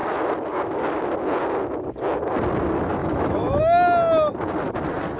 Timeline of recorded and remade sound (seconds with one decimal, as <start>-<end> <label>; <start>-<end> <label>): 0.0-3.0 recorded; 3.0-3.6 remade; 3.6-5.2 recorded